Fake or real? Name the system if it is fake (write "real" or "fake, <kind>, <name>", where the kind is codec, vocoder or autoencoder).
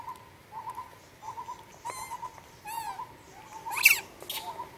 real